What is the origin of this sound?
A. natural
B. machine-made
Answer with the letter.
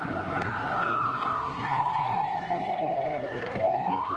B